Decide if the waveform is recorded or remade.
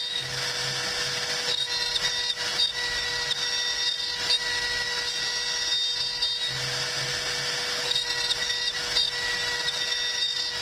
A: recorded